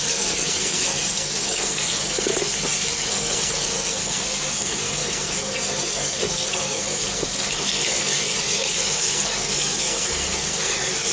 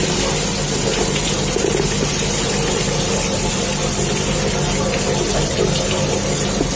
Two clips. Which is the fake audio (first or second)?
first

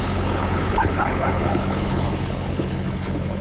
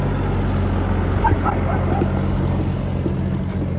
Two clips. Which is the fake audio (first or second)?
first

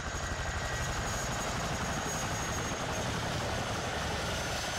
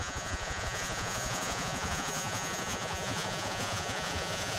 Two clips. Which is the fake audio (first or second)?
second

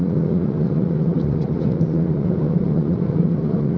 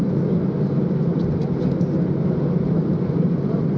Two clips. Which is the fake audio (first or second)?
first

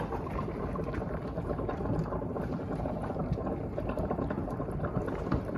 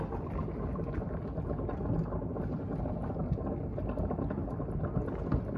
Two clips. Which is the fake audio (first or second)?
first